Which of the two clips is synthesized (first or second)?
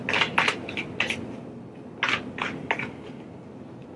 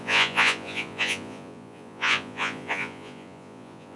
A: second